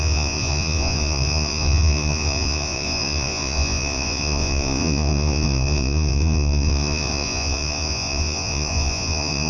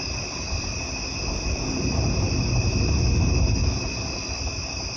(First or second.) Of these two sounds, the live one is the second